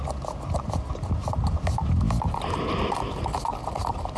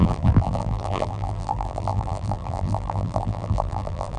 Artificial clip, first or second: second